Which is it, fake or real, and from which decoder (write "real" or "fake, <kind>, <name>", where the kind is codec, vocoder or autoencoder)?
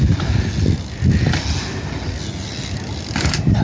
real